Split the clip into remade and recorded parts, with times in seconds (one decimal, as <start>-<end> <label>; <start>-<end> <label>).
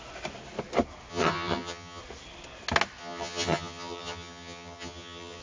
0.0-1.1 recorded; 1.1-2.0 remade; 2.0-3.0 recorded; 3.0-5.4 remade